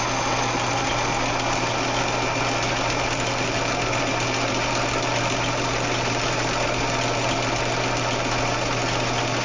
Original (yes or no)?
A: yes